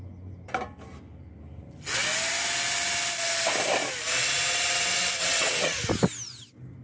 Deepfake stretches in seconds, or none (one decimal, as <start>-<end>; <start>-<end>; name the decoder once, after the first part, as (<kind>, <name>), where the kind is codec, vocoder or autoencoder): 5.2-5.8 (vocoder, WaveNeXt)